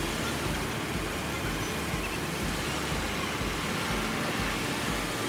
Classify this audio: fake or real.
real